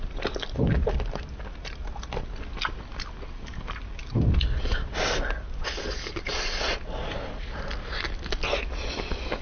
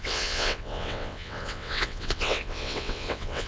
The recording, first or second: first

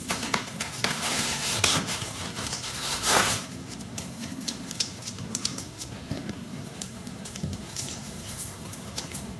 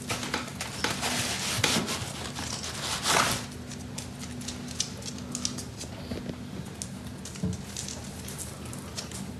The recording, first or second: second